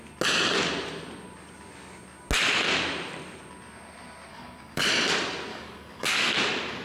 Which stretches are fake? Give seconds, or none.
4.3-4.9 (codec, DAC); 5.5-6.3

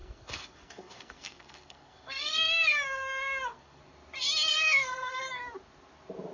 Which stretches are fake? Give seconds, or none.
0.0-3.8 (codec, SNAC); 4.5-5.2

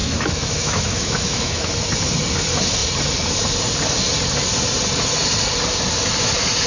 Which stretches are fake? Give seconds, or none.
0.0-1.7 (autoencoder, DAC-VAE)

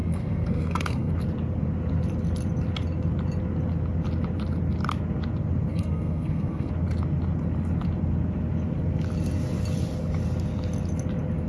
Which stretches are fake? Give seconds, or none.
0.0-1.1 (codec, SNAC); 5.7-6.7

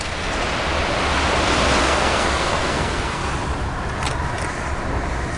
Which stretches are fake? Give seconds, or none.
0.0-0.4 (codec, SNAC); 1.8-3.2